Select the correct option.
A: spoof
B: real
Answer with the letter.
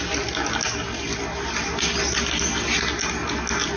B